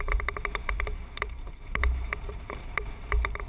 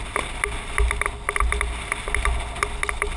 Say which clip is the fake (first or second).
first